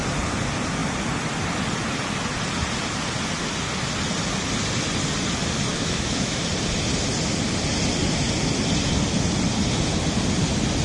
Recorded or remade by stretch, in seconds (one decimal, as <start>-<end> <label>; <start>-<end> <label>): 0.0-5.7 recorded; 5.7-6.4 remade; 6.4-10.8 recorded